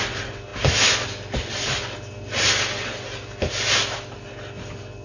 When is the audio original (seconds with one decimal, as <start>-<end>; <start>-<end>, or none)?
0.0-5.0